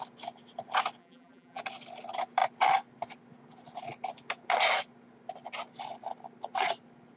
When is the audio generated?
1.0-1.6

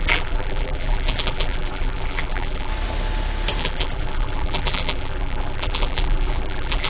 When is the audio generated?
0.0-2.7; 3.6-6.9

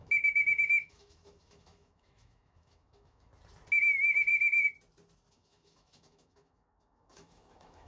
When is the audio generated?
0.0-3.3; 3.8-4.3; 5.3-7.9

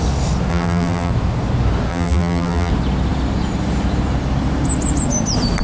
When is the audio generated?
0.5-1.1; 1.9-2.7